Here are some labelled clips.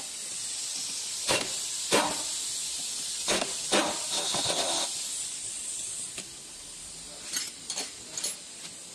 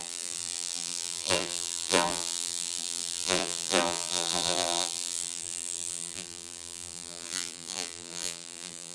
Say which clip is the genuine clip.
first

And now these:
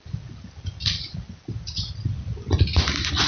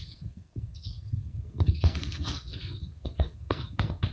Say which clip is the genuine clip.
first